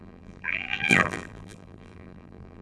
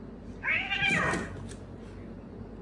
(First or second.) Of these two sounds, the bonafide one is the second